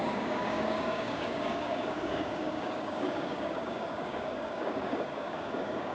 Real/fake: fake